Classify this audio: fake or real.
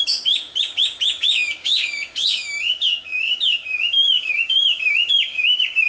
fake